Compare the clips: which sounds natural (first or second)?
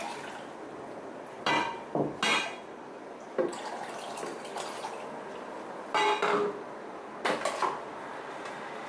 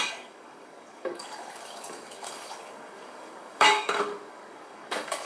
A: first